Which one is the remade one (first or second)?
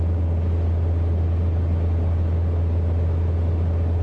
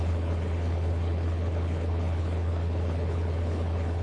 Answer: second